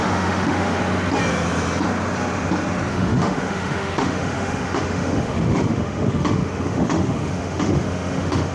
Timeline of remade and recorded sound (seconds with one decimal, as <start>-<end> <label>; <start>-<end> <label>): 0.0-0.8 remade; 0.8-2.9 recorded; 2.9-8.5 remade